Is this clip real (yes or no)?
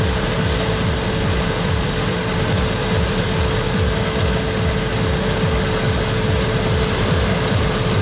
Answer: yes